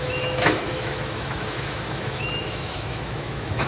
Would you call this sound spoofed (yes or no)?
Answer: yes